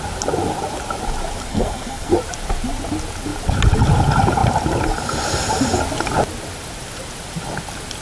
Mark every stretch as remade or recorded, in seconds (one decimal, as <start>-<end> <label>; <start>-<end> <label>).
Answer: 0.0-1.5 recorded; 1.5-2.1 remade; 2.1-8.0 recorded